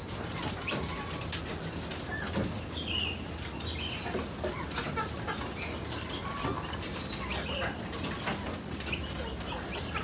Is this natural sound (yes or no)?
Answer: yes